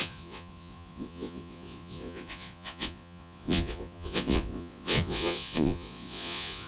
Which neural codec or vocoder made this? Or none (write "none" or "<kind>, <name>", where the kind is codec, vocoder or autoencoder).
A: vocoder, Vocos